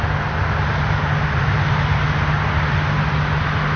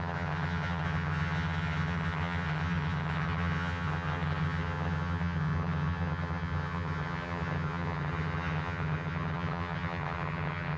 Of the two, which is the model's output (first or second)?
second